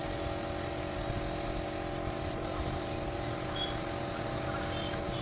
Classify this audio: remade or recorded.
recorded